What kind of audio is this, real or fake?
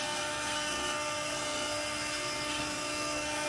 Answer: fake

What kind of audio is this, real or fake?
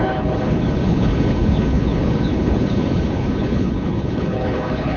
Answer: fake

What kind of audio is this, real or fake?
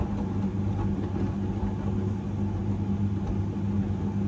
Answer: real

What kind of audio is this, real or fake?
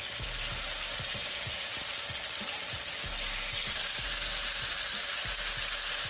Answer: real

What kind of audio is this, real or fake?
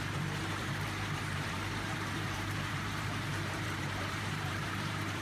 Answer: fake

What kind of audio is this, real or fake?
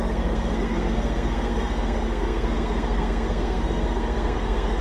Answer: fake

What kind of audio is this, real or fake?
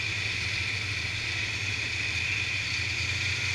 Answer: real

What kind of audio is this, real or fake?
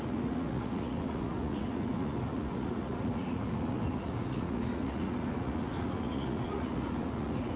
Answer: fake